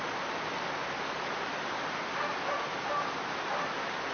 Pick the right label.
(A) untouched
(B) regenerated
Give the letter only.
A